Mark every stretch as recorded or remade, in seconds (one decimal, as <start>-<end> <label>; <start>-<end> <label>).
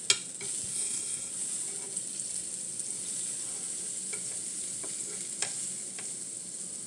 0.0-0.7 recorded; 0.7-1.3 remade; 1.3-6.9 recorded